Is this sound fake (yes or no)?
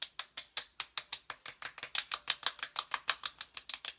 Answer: no